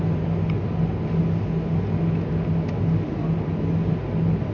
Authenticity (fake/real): real